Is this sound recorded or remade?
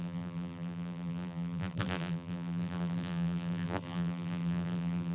remade